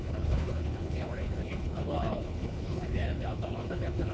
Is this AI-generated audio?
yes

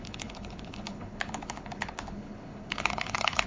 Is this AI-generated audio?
yes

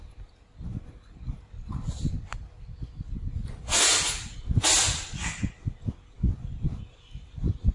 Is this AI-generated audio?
no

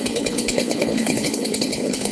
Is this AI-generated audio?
yes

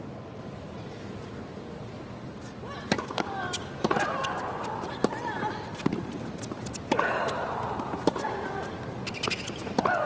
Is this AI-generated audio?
no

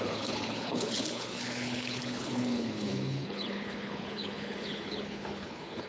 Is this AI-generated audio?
yes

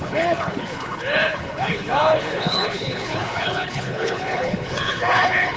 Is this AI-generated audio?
yes